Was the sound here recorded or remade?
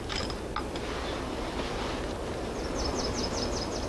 recorded